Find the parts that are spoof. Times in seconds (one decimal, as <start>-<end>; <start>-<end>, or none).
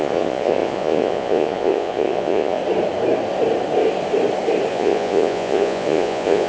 0.0-2.6; 4.7-6.5